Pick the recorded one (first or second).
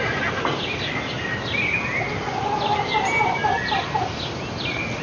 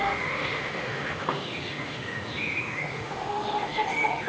first